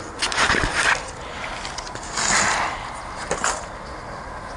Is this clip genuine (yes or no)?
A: yes